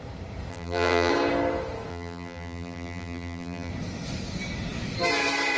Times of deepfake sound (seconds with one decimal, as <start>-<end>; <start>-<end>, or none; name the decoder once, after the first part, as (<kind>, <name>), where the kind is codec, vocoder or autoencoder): 0.5-1.1 (vocoder, BigVGAN v2); 1.9-3.7